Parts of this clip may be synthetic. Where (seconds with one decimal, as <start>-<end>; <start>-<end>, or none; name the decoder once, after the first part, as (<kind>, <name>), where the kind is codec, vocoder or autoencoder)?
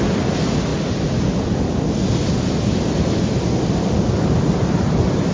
none